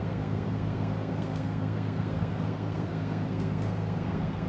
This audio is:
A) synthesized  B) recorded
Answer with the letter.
A